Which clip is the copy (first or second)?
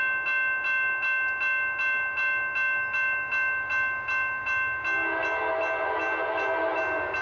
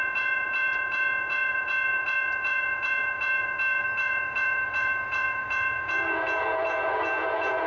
second